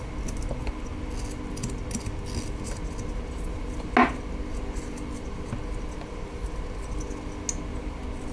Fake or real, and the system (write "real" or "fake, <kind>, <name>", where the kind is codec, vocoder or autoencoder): real